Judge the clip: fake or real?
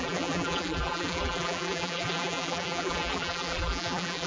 fake